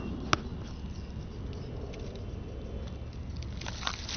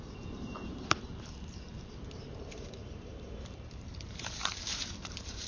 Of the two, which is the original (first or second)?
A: first